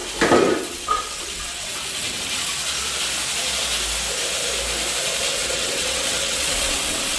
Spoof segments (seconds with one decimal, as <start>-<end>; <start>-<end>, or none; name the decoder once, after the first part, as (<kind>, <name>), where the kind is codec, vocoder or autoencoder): 0.6-2.5 (vocoder, WaveNeXt); 5.2-7.2